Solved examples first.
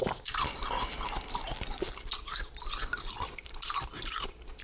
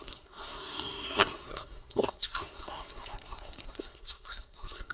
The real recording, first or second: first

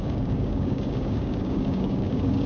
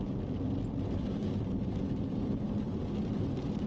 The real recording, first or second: second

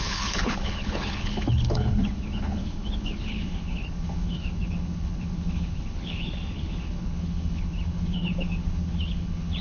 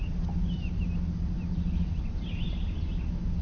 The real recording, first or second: second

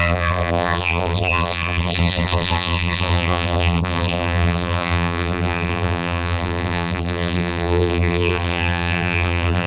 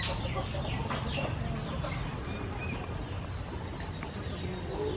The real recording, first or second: second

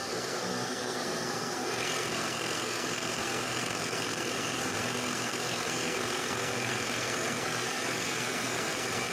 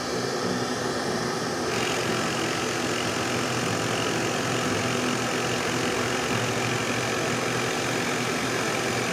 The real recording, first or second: second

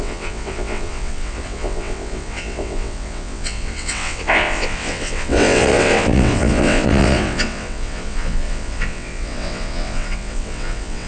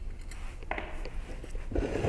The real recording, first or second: second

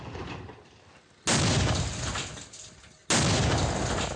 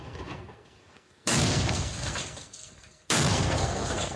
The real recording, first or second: first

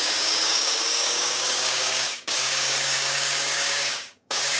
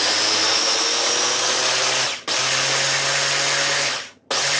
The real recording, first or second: second